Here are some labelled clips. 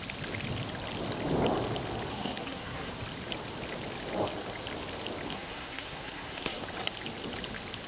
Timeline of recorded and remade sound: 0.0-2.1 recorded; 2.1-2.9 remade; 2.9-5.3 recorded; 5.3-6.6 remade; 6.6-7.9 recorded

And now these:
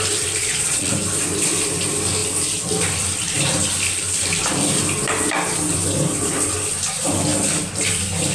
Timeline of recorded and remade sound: 0.0-0.4 recorded; 0.4-0.9 remade; 0.9-8.3 recorded

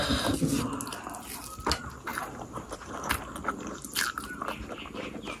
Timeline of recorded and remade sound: 0.0-2.1 recorded; 2.1-3.1 remade; 3.1-5.4 recorded

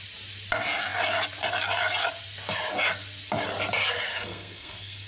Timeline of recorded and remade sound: 0.0-4.1 recorded; 4.1-5.1 remade

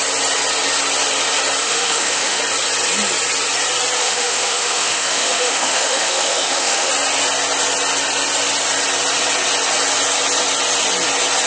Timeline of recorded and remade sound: 0.0-1.6 recorded; 1.6-2.4 remade; 2.4-4.0 recorded; 4.0-6.9 remade; 6.9-11.5 recorded

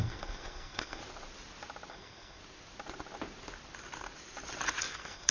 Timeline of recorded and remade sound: 0.0-1.0 remade; 1.0-1.9 recorded; 1.9-2.4 remade; 2.4-4.8 recorded; 4.8-5.3 remade

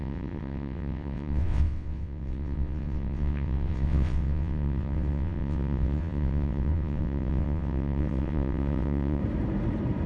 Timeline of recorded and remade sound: 0.0-9.2 remade; 9.2-10.1 recorded

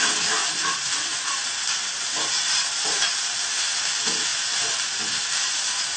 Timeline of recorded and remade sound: 0.0-0.4 recorded; 0.4-3.5 remade; 3.5-4.3 recorded; 4.3-5.0 remade; 5.0-6.0 recorded